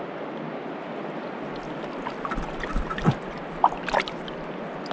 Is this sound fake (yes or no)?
no